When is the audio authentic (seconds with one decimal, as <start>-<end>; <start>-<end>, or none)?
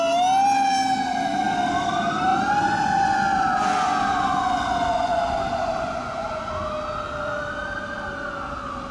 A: 0.0-2.3; 6.5-8.9